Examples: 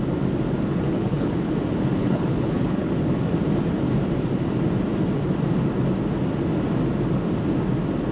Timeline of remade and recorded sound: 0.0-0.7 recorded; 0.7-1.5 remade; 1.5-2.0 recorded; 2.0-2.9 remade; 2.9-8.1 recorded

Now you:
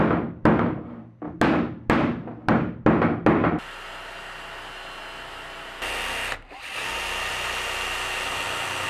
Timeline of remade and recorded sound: 0.0-3.4 recorded; 3.4-3.9 remade; 3.9-8.9 recorded

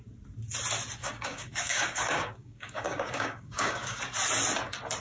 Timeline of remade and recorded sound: 0.0-1.0 recorded; 1.0-4.0 remade; 4.0-5.0 recorded